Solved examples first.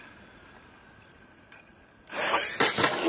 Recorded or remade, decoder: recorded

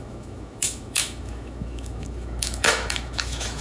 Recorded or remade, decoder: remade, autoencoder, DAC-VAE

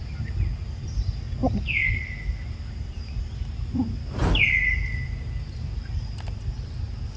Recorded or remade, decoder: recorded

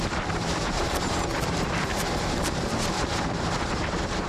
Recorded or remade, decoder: remade, vocoder, BigVGAN v2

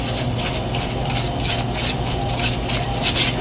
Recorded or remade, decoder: recorded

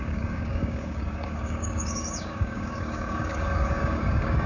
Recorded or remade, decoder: remade, codec, DAC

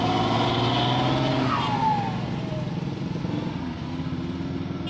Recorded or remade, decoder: recorded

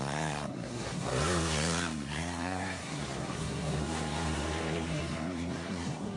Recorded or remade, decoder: remade, codec, SNAC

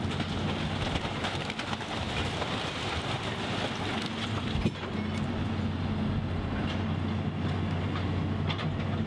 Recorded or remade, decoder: recorded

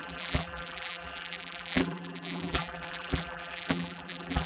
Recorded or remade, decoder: remade, vocoder, BigVGAN v2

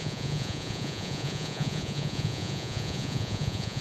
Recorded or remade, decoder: remade, vocoder, Vocos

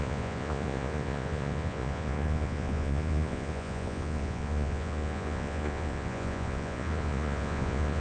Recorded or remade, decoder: remade, vocoder, Vocos